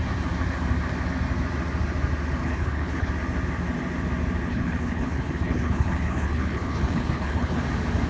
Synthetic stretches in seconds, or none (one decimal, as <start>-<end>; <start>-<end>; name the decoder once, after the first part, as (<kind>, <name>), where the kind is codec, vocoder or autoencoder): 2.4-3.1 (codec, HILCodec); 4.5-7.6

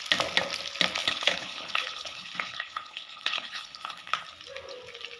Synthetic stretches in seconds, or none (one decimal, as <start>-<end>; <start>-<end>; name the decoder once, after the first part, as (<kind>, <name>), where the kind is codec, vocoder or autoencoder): 1.0-4.1 (codec, HILCodec)

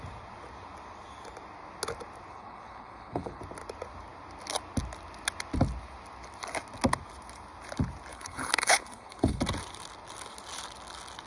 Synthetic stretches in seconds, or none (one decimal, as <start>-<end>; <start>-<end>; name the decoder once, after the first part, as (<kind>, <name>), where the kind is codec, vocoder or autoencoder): 2.3-3.4 (codec, HILCodec); 8.1-9.4